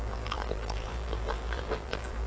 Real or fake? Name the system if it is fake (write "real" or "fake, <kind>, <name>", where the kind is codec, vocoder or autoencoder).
fake, vocoder, BigVGAN v2